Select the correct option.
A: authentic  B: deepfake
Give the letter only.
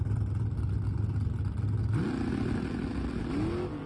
A